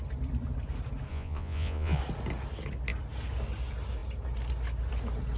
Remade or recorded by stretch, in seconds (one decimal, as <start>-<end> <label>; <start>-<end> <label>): 0.0-1.1 recorded; 1.1-2.0 remade; 2.0-5.4 recorded